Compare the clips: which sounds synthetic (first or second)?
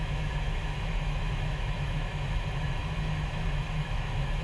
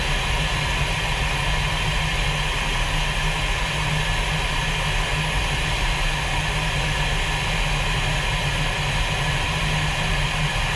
first